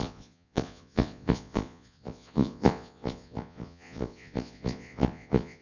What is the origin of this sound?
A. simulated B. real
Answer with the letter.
A